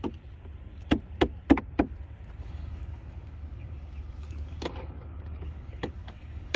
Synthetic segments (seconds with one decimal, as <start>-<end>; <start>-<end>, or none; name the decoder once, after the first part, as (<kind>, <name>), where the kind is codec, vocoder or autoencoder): 2.4-6.6 (codec, DAC)